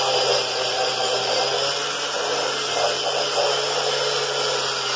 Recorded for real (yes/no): yes